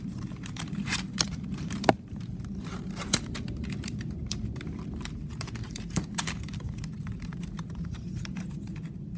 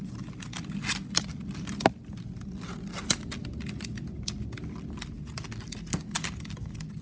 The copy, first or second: first